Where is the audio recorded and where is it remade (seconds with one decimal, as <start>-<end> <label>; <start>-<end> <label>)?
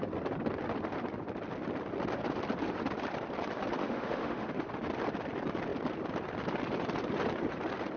0.0-3.8 recorded; 3.8-4.7 remade; 4.7-8.0 recorded